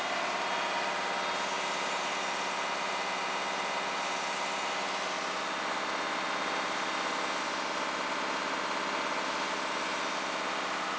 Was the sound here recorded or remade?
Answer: recorded